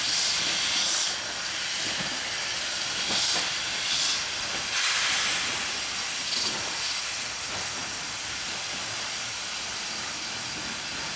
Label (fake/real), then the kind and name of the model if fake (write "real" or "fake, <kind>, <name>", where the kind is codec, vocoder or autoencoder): fake, vocoder, BigVGAN v2